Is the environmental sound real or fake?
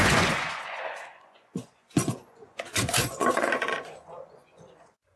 fake